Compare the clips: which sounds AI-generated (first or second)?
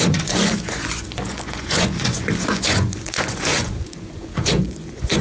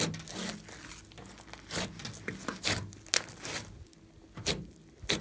first